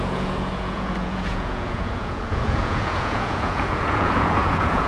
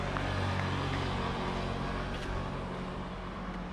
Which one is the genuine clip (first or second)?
second